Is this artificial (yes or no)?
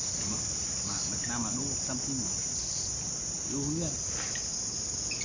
no